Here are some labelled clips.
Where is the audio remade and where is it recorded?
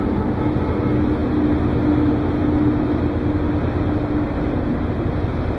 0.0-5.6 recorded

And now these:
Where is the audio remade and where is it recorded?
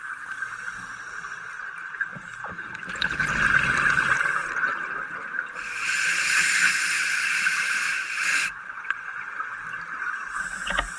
0.0-8.3 recorded; 8.3-9.3 remade; 9.3-11.0 recorded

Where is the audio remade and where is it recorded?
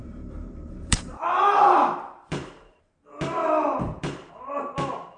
0.0-2.9 remade; 2.9-3.4 recorded; 3.4-4.3 remade; 4.3-5.2 recorded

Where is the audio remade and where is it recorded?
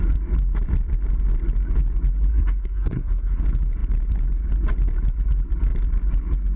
0.0-2.3 recorded; 2.3-3.4 remade; 3.4-6.6 recorded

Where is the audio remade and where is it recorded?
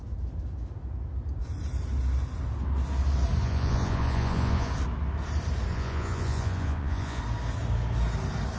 0.0-3.4 recorded; 3.4-4.7 remade; 4.7-5.7 recorded; 5.7-7.2 remade; 7.2-8.6 recorded